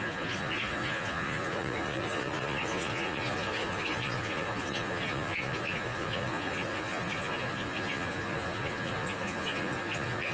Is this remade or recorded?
remade